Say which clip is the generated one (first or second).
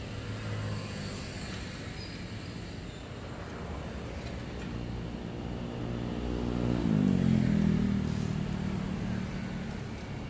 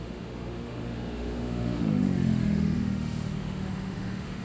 second